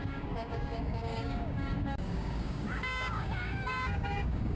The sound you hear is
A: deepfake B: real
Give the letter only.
A